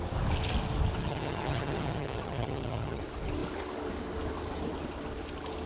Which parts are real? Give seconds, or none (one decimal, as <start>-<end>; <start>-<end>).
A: 0.0-1.0; 3.0-5.7